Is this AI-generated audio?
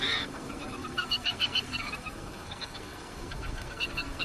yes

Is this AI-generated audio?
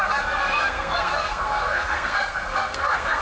yes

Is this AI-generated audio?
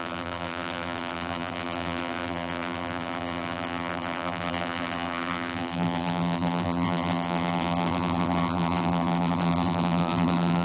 yes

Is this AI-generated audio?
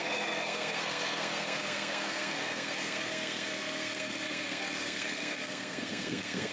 yes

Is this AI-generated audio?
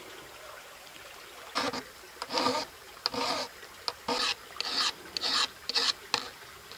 no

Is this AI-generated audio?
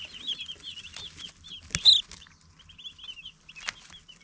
no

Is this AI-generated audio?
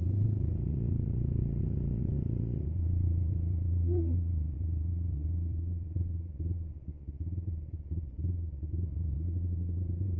yes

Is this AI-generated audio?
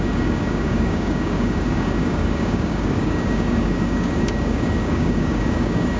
yes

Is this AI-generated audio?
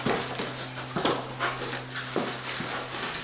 no